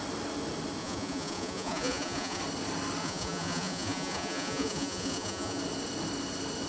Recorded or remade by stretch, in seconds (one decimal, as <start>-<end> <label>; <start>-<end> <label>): 0.0-0.8 recorded; 0.8-2.4 remade; 2.4-3.0 recorded; 3.0-5.6 remade; 5.6-6.7 recorded